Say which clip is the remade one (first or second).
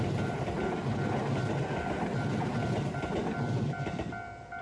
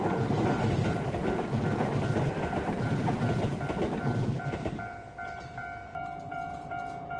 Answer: second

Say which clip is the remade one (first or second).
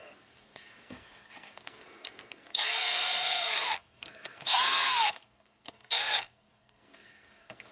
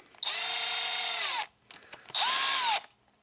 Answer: first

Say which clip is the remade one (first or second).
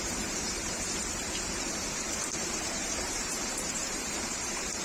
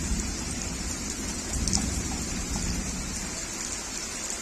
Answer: first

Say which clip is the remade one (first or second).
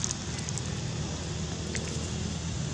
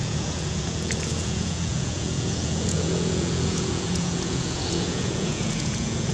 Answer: second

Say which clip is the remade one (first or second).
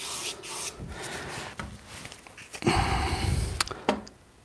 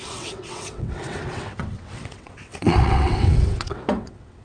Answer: second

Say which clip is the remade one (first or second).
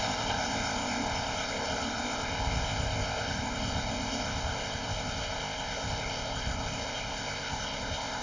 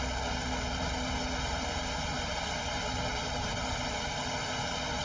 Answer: first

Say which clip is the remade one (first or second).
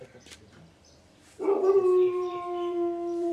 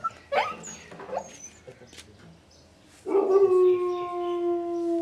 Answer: first